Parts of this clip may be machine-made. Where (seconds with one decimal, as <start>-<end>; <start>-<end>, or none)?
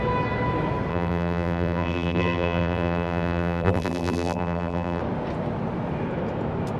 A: 0.9-5.0